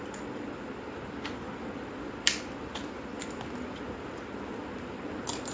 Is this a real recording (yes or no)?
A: yes